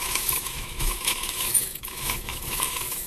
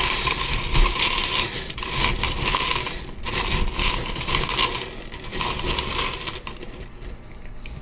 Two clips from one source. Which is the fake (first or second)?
first